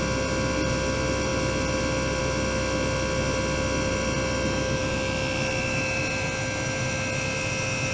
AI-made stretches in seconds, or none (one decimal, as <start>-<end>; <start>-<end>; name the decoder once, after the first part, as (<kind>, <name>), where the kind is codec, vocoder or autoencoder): none